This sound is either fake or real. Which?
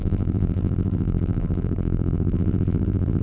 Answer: fake